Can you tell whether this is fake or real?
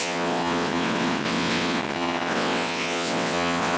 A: fake